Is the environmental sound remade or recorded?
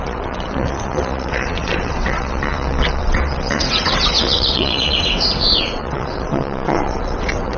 remade